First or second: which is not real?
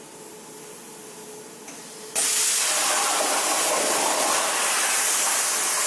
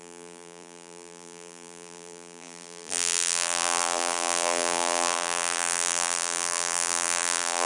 second